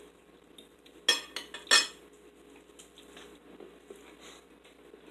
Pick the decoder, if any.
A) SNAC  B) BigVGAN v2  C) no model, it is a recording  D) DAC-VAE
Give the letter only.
C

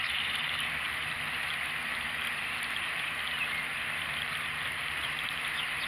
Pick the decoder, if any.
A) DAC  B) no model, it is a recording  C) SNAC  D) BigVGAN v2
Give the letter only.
D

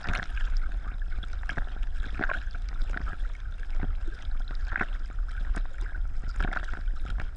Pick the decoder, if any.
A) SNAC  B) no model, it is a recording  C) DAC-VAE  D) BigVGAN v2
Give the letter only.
B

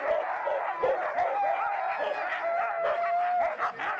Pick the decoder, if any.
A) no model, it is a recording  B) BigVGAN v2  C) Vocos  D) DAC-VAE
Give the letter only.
A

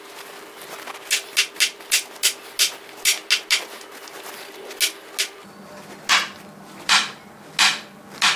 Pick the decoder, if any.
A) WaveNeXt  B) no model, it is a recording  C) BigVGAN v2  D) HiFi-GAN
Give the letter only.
B